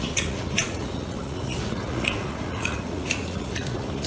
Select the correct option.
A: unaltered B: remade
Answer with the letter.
B